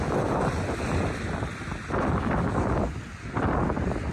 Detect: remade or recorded recorded